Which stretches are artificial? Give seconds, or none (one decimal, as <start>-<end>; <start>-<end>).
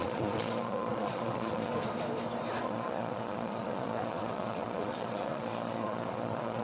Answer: 0.0-1.7; 2.6-6.6